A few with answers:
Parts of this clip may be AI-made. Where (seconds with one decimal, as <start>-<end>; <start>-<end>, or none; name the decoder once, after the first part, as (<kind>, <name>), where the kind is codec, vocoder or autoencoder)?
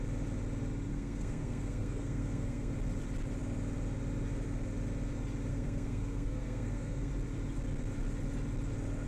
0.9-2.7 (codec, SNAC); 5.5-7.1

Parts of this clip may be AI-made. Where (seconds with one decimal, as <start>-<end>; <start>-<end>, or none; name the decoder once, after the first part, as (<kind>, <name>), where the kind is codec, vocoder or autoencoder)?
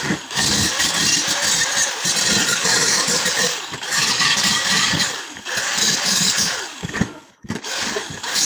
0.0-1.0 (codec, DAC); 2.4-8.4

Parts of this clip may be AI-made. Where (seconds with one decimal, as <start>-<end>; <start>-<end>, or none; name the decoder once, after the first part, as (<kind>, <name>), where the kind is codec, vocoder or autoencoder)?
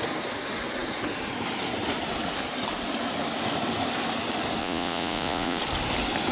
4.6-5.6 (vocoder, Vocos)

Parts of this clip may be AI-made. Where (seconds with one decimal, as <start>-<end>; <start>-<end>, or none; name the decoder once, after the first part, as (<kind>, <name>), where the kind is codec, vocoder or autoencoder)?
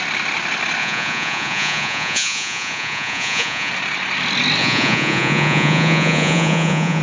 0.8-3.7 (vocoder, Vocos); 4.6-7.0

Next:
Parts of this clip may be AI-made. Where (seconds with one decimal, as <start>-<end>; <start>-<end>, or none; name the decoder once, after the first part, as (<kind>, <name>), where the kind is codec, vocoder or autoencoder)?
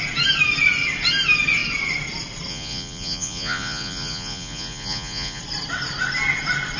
2.5-5.4 (vocoder, Vocos)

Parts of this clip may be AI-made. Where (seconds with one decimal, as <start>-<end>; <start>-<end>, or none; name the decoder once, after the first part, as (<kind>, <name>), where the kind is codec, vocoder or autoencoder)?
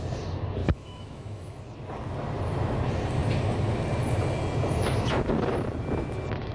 0.6-1.6 (autoencoder, DAC-VAE)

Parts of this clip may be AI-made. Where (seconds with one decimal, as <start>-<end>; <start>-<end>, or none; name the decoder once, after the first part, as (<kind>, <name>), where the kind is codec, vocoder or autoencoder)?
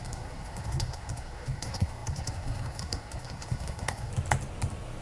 0.0-4.1 (codec, SNAC)